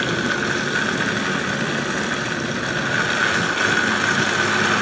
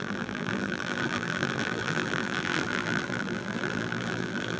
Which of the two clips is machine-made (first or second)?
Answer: second